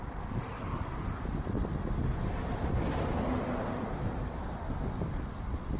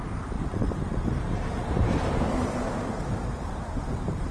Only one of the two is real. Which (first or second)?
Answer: first